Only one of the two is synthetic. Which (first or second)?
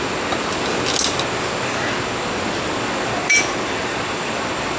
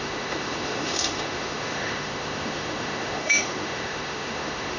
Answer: second